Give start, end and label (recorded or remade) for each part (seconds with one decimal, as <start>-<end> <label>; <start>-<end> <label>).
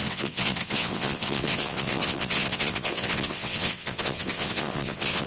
0.0-5.3 remade